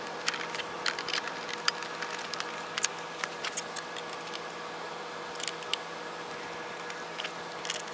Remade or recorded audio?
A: recorded